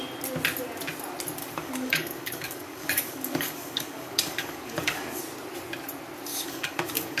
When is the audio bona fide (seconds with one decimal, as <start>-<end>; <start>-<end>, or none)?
0.0-1.4; 5.2-6.3